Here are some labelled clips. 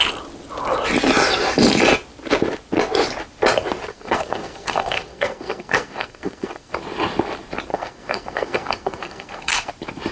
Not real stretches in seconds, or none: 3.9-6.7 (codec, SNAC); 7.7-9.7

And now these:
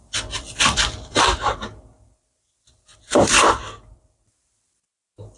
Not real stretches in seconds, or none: none

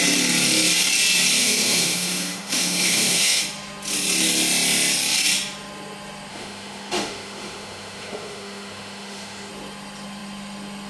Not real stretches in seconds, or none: 1.4-3.4 (autoencoder, DAC-VAE); 6.3-9.5

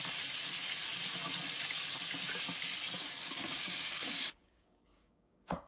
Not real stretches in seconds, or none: 3.0-5.7 (codec, DAC)

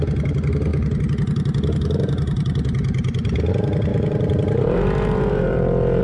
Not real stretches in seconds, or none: 3.9-6.0 (vocoder, BigVGAN v2)